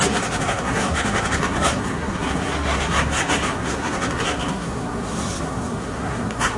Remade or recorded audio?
remade